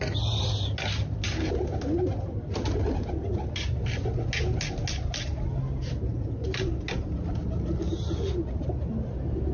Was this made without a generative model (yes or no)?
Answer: yes